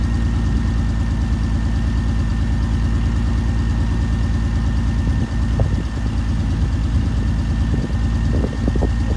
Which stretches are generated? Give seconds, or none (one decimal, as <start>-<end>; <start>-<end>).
none